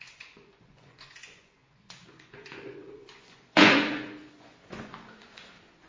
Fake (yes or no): yes